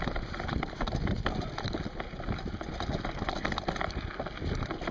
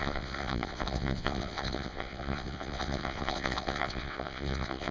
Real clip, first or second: first